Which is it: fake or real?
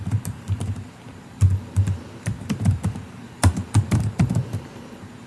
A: fake